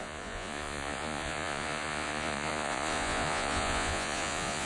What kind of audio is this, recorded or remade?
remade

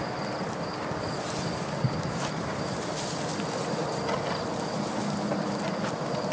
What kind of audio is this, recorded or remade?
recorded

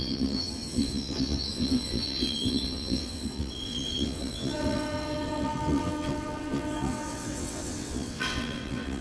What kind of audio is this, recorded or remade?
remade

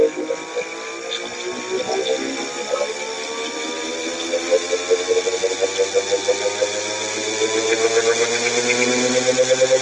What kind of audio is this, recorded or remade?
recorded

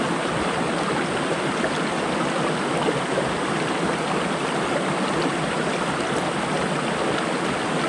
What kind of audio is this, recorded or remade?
recorded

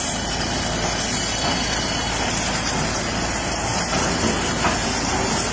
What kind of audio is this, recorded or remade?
recorded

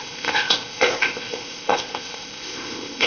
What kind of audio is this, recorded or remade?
remade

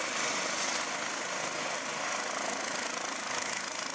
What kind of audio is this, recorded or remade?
recorded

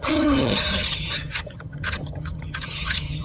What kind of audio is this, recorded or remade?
remade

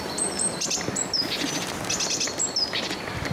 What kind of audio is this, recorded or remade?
recorded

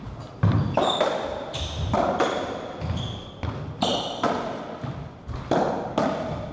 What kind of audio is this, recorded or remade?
recorded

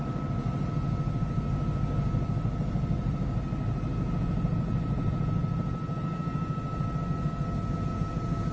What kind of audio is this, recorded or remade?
recorded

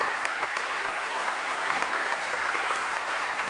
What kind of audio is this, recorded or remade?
remade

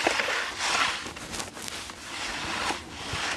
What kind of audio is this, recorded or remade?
recorded